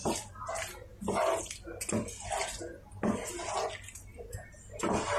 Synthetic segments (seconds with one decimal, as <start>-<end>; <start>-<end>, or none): none